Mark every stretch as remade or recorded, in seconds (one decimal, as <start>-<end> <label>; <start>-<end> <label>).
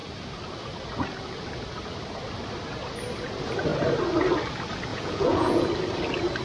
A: 0.0-4.9 recorded; 4.9-5.7 remade; 5.7-6.4 recorded